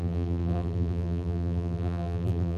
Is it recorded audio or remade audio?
remade